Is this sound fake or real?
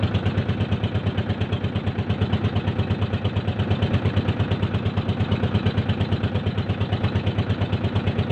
real